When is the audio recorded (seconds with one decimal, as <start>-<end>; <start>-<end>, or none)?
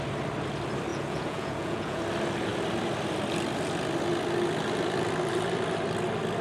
0.0-0.9; 2.0-6.4